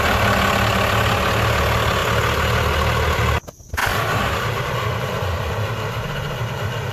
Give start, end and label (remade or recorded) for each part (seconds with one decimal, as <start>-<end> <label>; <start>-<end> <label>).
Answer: 0.0-3.8 recorded; 3.8-4.9 remade; 4.9-6.9 recorded